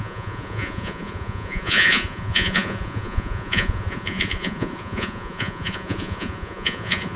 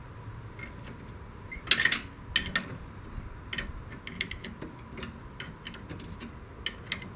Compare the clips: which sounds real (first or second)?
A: second